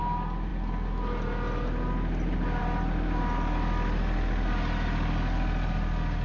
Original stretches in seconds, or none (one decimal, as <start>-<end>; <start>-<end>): 0.0-6.2